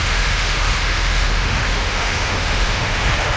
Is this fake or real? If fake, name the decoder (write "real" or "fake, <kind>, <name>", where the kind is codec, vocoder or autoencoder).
fake, autoencoder, DAC-VAE